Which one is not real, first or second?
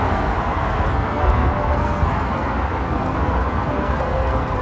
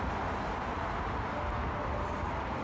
first